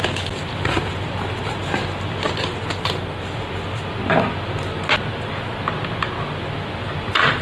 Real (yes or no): yes